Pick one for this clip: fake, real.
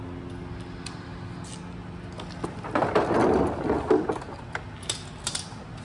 real